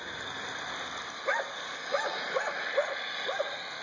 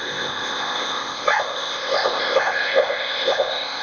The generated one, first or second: second